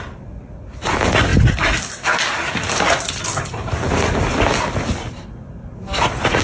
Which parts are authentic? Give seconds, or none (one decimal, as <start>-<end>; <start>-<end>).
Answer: 0.0-6.4